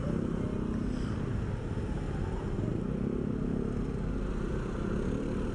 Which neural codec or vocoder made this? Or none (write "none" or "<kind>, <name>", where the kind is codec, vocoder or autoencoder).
none